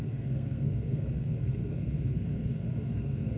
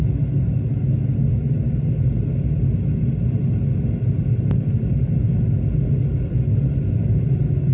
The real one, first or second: second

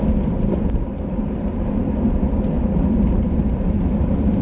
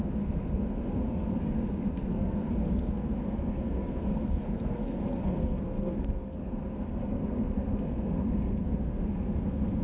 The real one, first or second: first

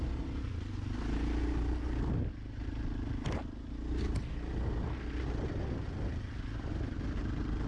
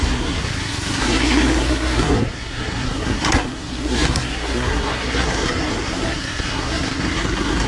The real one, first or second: first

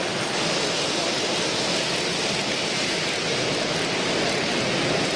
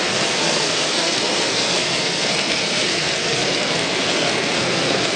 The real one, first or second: first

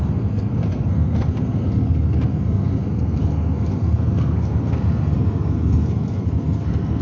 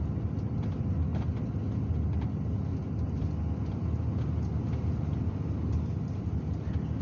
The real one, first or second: second